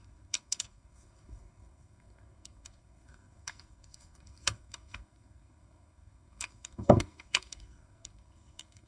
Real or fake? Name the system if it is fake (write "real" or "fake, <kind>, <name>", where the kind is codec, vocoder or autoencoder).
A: fake, codec, SNAC